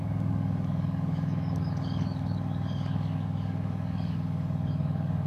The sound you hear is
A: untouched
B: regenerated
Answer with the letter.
B